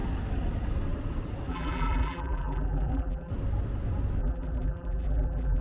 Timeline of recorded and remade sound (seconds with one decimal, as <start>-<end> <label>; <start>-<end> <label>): 0.0-1.5 recorded; 1.5-3.3 remade; 3.3-4.2 recorded; 4.2-5.6 remade